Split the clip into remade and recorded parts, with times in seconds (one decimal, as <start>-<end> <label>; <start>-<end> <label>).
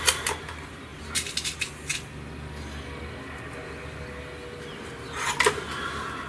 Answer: 0.0-6.3 recorded